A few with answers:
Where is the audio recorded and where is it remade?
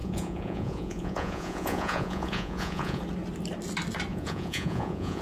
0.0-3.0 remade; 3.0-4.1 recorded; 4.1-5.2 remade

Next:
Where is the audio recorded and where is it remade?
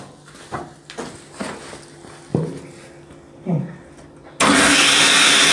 0.0-5.5 recorded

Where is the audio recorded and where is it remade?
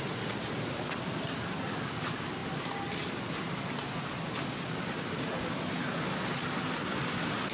0.0-7.5 recorded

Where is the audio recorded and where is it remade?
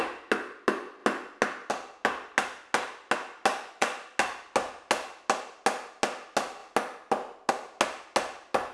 0.0-3.5 recorded; 3.5-4.0 remade; 4.0-8.7 recorded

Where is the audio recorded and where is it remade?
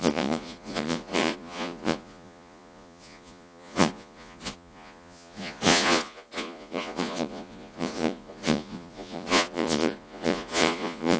0.0-11.2 remade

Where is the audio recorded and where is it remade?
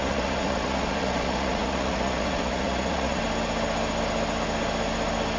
0.0-3.2 remade; 3.2-5.4 recorded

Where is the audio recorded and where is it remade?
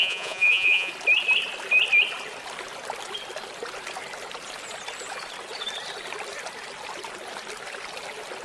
0.0-0.9 remade; 0.9-8.4 recorded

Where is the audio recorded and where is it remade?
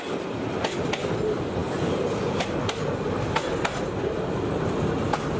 0.0-5.4 recorded